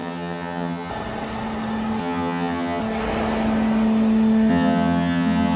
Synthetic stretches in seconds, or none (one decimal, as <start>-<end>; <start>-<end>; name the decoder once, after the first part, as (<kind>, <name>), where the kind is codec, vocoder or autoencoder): 0.0-0.9 (vocoder, HiFi-GAN); 2.0-2.8; 4.5-5.6